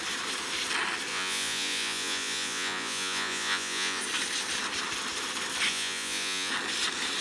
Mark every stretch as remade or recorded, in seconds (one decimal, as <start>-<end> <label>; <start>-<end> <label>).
0.0-1.1 recorded; 1.1-4.0 remade; 4.0-5.7 recorded; 5.7-6.5 remade; 6.5-7.2 recorded